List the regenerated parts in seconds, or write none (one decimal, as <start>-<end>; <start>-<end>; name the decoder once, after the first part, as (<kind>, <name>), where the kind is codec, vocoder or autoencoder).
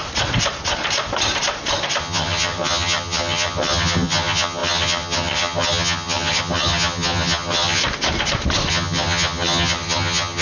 2.0-7.8 (vocoder, HiFi-GAN); 8.7-10.4